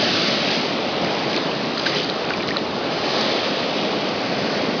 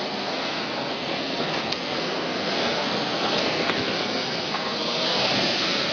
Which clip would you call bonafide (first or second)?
first